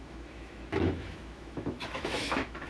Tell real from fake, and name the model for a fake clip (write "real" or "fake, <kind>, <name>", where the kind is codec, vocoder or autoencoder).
fake, autoencoder, DAC-VAE